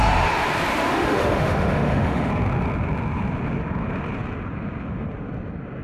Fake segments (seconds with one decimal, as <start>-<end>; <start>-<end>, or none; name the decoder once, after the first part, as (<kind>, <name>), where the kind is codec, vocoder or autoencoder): 0.7-2.3 (autoencoder, DAC-VAE)